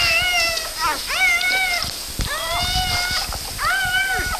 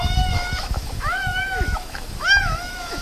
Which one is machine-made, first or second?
second